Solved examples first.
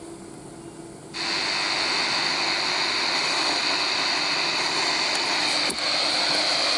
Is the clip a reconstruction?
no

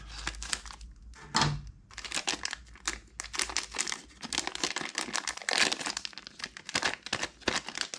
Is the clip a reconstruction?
no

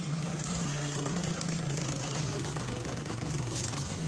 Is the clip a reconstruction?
yes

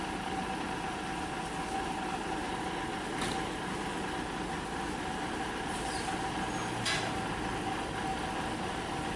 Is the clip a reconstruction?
no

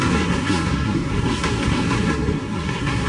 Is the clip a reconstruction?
yes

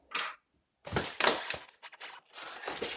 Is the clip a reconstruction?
no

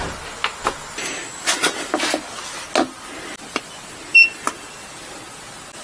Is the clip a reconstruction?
no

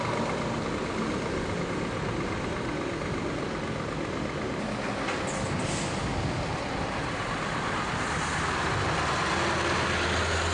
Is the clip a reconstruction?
no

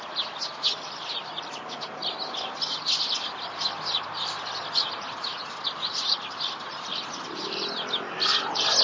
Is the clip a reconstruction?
no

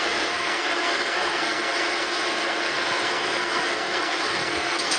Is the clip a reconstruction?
yes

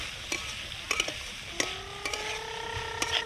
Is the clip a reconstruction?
no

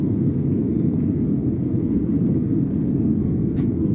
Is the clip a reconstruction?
yes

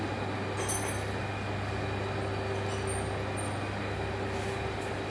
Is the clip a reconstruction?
no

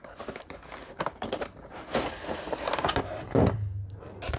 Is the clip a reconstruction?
no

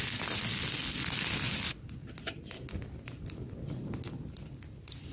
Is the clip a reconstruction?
no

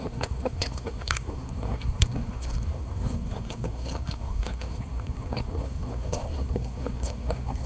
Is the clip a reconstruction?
yes